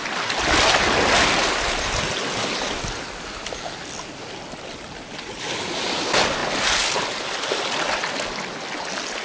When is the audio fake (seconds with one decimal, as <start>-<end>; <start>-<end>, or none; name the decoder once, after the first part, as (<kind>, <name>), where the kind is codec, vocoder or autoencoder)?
none